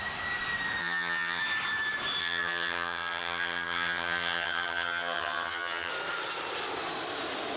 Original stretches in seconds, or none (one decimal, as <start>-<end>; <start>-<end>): 0.0-0.8; 1.4-2.2; 5.9-7.6